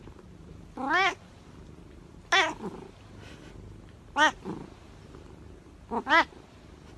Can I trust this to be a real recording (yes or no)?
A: yes